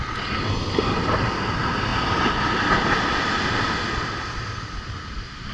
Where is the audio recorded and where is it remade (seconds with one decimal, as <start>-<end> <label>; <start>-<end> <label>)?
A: 0.0-5.5 recorded